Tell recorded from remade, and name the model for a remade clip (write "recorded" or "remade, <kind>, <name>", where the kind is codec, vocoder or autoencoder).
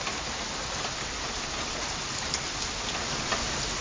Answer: recorded